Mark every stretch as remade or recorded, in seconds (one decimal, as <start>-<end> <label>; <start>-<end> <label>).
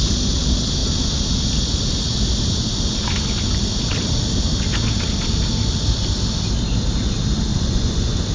0.0-7.5 recorded; 7.5-8.3 remade